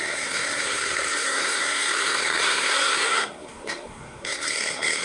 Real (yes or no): no